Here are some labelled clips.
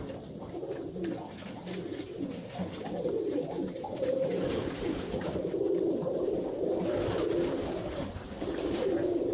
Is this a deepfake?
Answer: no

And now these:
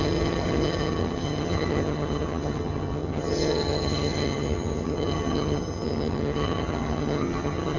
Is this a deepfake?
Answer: yes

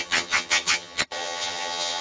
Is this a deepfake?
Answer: yes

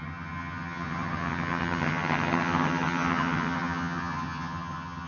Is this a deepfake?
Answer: yes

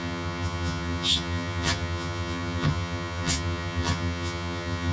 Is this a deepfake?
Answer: yes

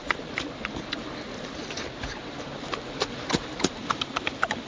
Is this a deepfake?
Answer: no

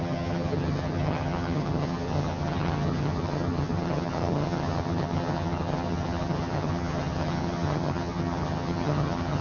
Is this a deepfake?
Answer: yes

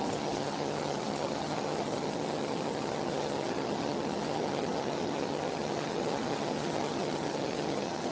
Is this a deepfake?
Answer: yes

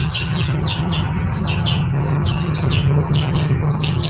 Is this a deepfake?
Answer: yes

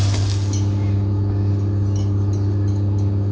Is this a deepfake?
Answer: no